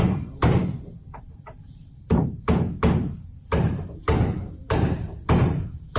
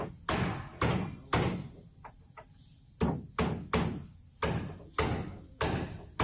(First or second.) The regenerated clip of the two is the first